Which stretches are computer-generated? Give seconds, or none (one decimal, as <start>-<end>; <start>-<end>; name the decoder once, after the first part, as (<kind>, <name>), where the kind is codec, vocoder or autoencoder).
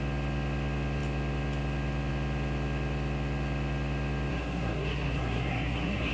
4.3-6.1 (codec, SNAC)